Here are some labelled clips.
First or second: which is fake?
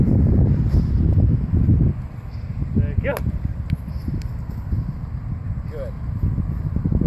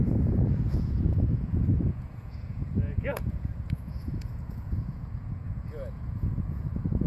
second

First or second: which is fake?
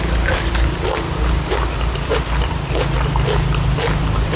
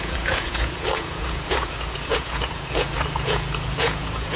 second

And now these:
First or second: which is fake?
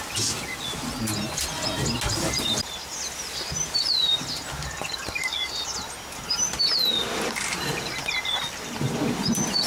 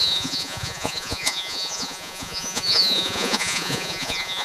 second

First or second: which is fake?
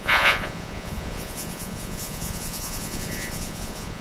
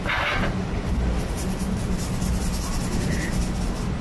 first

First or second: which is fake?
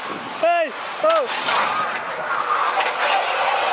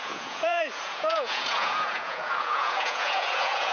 second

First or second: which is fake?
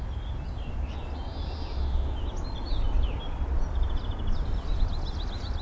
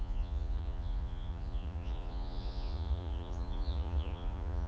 second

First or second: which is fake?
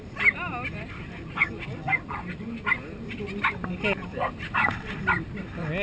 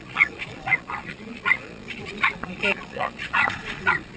second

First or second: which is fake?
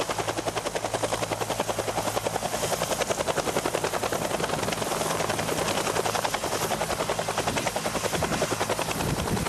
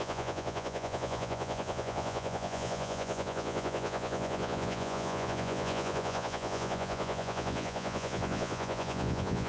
second